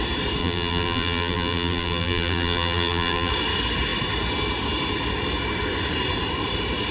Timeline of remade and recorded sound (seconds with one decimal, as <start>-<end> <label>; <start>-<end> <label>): 0.0-0.4 recorded; 0.4-3.3 remade; 3.3-6.9 recorded